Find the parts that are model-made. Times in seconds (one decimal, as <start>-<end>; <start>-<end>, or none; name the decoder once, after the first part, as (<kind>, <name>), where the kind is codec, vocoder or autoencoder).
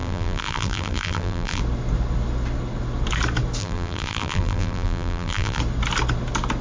0.0-1.6 (vocoder, BigVGAN v2); 3.6-5.6